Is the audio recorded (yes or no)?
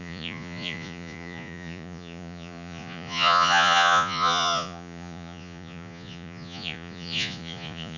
no